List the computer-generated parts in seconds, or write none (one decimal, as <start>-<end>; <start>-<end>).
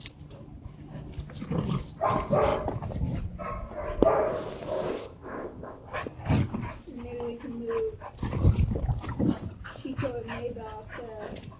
4.9-5.9